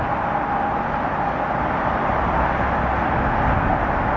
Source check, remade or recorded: recorded